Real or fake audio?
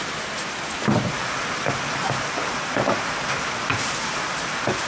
real